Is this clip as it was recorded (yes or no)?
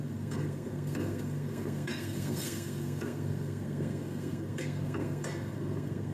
no